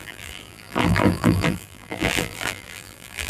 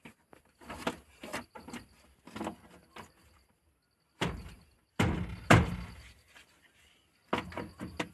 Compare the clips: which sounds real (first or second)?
second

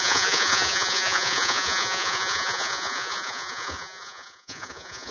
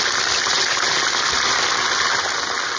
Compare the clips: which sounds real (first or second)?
second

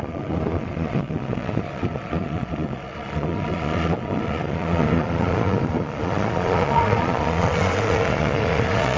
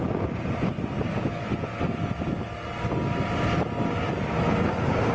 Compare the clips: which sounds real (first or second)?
second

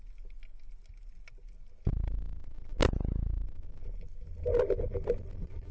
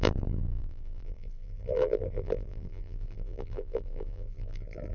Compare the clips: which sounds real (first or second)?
first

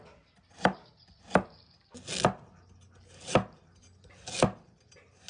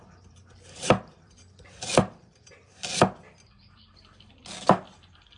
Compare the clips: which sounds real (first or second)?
first